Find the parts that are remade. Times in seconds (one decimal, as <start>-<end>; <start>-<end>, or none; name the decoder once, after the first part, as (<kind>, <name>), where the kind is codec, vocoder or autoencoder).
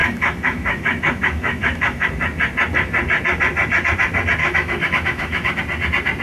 0.0-2.1 (autoencoder, DAC-VAE); 4.4-5.6